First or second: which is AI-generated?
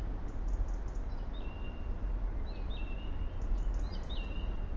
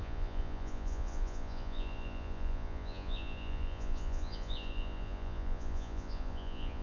second